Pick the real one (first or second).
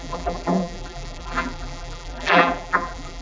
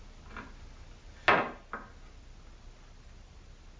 second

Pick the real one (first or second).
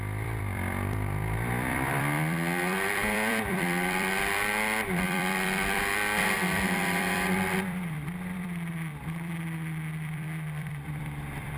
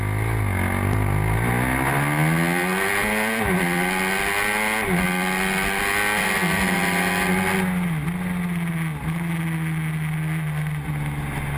second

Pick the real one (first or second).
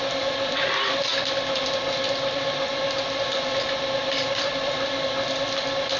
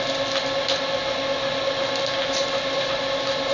second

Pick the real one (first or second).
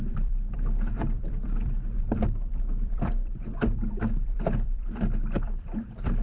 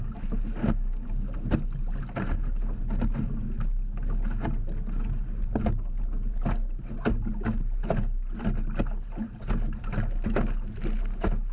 second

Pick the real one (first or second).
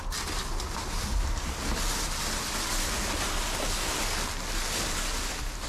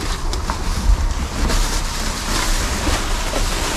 first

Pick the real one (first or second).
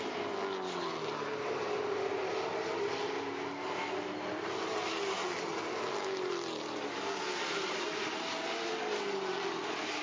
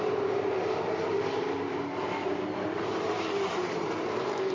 first